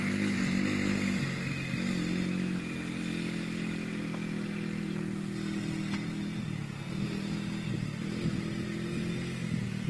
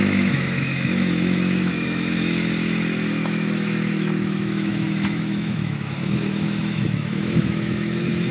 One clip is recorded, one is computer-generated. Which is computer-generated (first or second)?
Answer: second